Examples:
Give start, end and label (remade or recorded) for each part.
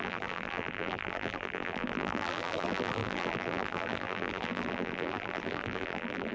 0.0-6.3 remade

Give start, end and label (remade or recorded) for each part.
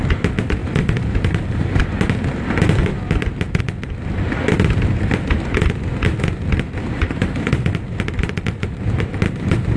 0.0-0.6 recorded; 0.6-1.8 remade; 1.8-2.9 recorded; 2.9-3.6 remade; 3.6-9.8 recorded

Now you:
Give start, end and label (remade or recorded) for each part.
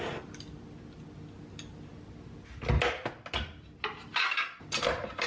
0.0-5.3 recorded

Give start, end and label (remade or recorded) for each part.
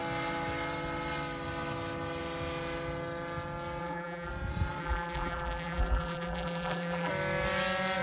0.0-3.8 recorded; 3.8-4.3 remade; 4.3-4.8 recorded; 4.8-7.1 remade; 7.1-8.0 recorded